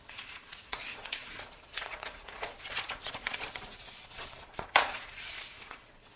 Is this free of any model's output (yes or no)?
no